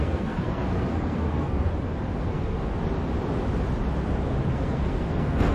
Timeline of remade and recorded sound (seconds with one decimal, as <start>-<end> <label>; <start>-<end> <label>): 0.0-1.7 remade; 1.7-2.2 recorded; 2.2-2.7 remade; 2.7-4.5 recorded; 4.5-5.5 remade